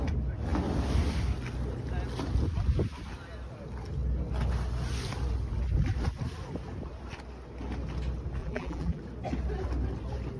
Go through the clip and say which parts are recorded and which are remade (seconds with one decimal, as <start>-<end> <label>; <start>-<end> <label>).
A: 0.0-8.4 recorded; 8.4-9.0 remade; 9.0-10.4 recorded